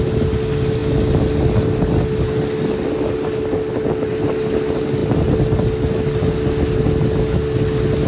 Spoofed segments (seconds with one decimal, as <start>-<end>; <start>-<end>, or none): none